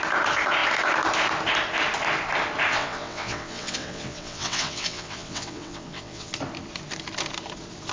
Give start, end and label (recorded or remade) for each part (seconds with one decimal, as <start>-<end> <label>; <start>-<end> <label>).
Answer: 0.0-2.7 recorded; 2.7-6.3 remade; 6.3-7.9 recorded